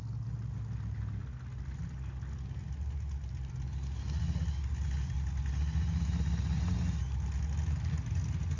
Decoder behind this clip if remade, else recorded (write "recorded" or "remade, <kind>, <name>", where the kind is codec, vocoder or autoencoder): recorded